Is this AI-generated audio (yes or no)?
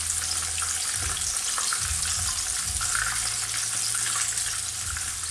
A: no